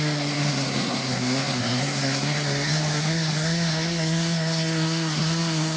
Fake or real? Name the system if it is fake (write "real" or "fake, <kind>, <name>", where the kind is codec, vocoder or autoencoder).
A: fake, codec, SNAC